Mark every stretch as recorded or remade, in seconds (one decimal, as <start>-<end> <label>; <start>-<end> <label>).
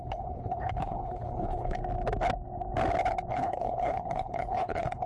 0.0-1.8 remade; 1.8-3.3 recorded; 3.3-5.1 remade